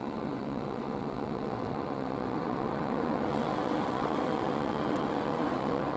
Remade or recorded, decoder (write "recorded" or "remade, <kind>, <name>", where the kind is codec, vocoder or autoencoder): remade, vocoder, WaveNeXt